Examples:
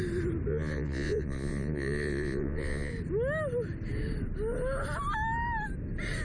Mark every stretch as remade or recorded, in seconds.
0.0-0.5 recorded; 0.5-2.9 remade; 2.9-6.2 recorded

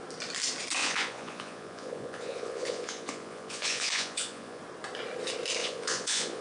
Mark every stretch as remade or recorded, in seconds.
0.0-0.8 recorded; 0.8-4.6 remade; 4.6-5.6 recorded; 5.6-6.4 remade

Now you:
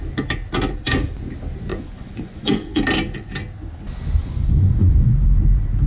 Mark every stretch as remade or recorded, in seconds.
0.0-1.7 recorded; 1.7-2.8 remade; 2.8-4.2 recorded; 4.2-5.4 remade; 5.4-5.9 recorded